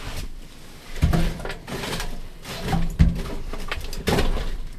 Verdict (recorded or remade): remade